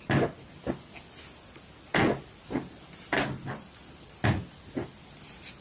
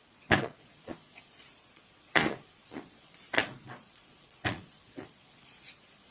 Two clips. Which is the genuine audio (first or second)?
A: first